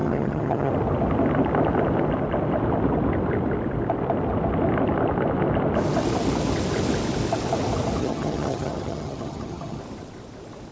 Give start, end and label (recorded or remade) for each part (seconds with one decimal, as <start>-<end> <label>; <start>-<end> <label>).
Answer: 0.0-0.7 remade; 0.7-8.0 recorded; 8.0-9.8 remade; 9.8-10.7 recorded